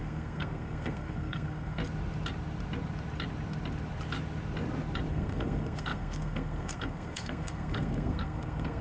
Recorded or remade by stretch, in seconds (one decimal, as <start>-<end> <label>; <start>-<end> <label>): 0.0-1.8 remade; 1.8-5.1 recorded; 5.1-8.8 remade